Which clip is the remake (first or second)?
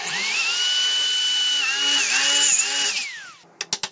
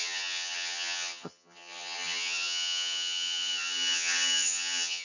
second